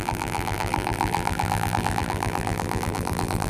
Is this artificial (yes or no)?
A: yes